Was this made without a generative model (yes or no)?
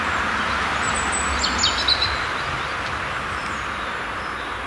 yes